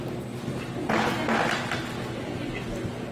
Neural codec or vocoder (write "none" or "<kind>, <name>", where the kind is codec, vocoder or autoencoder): none